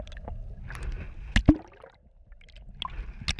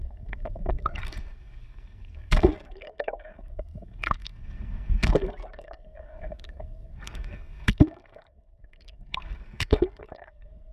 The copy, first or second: second